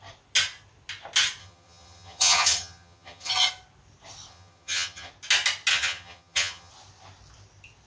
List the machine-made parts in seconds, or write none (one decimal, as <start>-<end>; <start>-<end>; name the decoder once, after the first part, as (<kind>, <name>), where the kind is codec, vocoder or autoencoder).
1.4-3.3 (vocoder, HiFi-GAN); 4.3-5.1; 5.7-6.7